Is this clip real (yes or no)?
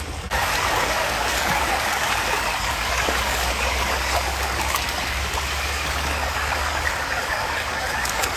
no